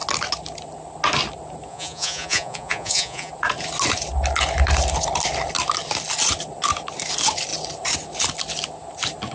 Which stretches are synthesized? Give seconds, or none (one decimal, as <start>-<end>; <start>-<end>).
1.7-3.3